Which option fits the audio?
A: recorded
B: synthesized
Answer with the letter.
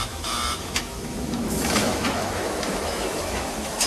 B